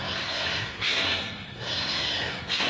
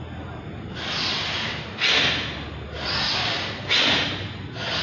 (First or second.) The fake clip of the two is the first